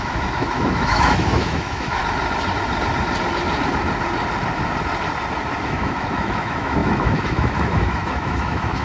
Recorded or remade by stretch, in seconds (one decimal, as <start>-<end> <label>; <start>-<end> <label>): 0.0-2.0 remade; 2.0-5.6 recorded; 5.6-8.8 remade